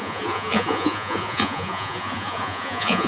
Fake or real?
fake